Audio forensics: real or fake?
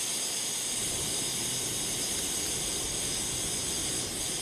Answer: real